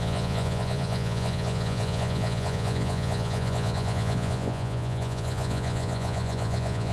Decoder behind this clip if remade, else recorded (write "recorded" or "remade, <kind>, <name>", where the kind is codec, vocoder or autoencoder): remade, vocoder, Vocos